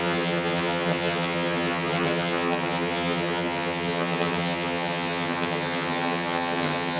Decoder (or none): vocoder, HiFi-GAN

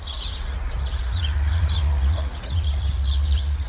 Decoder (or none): vocoder, Vocos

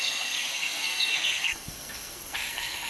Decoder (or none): codec, SNAC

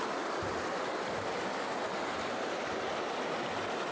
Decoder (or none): none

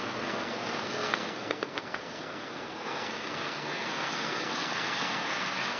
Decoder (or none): codec, SNAC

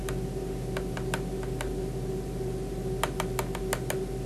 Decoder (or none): none